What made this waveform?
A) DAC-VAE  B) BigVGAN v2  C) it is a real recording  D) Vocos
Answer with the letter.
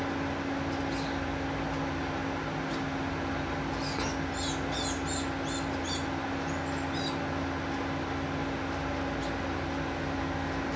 C